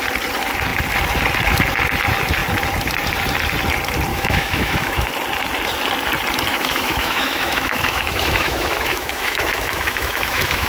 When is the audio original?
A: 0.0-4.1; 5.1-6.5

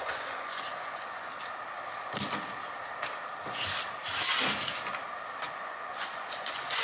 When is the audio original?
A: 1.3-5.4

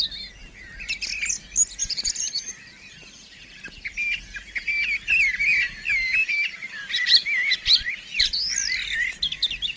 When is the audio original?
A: 0.0-1.8; 3.7-6.2; 8.3-9.8

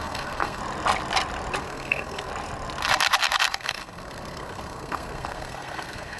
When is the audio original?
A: 0.6-1.6; 2.3-3.5